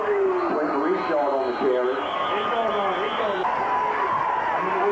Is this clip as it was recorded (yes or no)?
yes